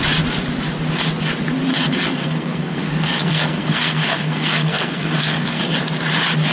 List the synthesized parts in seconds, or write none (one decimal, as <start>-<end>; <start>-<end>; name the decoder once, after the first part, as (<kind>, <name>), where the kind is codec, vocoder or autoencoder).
1.7-5.6 (codec, SNAC)